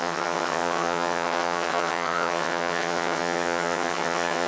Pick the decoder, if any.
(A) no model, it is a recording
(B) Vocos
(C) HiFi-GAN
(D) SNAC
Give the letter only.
C